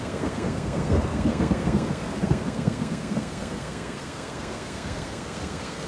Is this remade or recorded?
remade